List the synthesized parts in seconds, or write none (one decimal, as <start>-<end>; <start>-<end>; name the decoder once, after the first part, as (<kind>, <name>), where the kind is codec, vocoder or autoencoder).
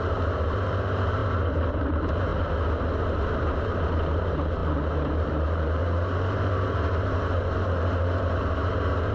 0.0-2.3 (vocoder, BigVGAN v2); 3.5-9.1